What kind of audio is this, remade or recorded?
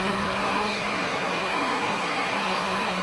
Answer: remade